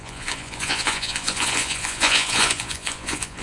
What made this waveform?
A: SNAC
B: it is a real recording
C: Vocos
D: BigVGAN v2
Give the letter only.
C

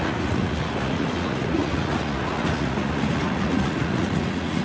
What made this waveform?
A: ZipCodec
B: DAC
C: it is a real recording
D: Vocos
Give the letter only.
D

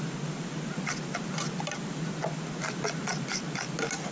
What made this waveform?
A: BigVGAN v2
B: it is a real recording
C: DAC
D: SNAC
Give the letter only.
B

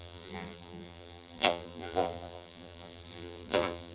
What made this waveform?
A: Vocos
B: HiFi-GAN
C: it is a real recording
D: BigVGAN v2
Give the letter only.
D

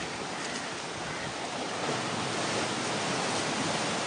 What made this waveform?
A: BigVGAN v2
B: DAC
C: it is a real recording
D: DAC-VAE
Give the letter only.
C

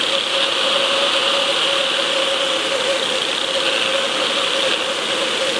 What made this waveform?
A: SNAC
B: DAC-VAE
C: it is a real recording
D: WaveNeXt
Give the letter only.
C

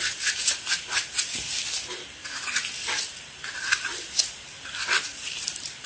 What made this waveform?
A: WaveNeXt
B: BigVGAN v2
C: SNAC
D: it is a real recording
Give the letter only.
D